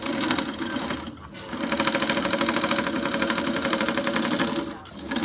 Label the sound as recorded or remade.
remade